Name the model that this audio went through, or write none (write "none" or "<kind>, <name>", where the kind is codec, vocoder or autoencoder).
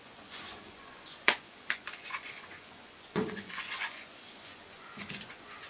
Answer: vocoder, Vocos